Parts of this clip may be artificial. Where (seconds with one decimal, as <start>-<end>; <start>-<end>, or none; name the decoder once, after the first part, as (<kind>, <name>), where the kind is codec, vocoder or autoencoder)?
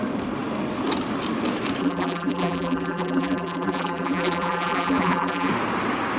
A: 1.8-5.5 (vocoder, BigVGAN v2)